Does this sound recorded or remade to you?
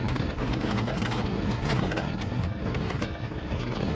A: remade